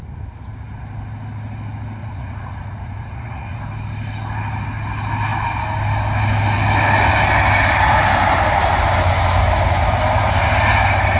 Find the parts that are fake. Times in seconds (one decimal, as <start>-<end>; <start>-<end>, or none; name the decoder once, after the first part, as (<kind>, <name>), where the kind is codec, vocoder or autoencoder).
2.0-3.6 (vocoder, Vocos)